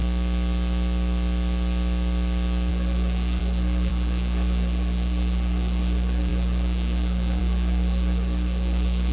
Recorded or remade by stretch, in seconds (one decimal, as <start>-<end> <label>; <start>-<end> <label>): 0.0-2.7 recorded; 2.7-9.1 remade